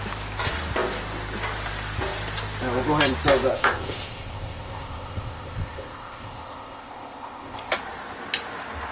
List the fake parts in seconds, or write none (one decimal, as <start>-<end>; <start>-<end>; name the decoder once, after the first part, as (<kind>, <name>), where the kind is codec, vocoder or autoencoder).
3.5-7.7 (codec, ZipCodec)